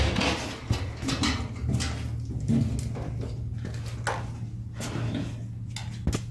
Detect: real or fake real